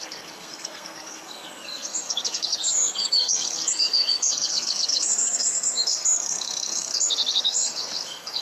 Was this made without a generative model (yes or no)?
no